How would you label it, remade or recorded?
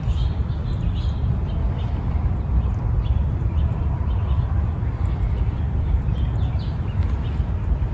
remade